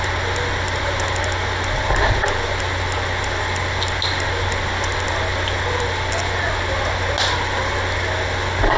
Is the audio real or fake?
real